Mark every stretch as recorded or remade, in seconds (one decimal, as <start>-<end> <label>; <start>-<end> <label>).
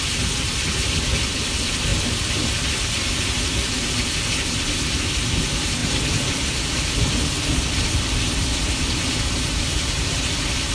0.0-10.7 remade